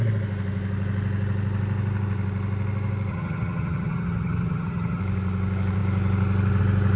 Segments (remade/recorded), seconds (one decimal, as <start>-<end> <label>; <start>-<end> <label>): 0.0-3.1 recorded; 3.1-5.0 remade; 5.0-7.0 recorded